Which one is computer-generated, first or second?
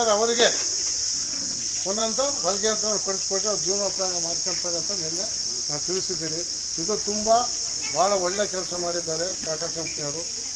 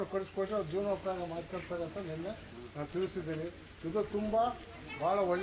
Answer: first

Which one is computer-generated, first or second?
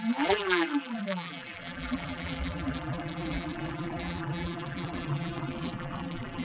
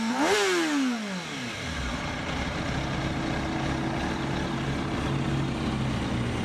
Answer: first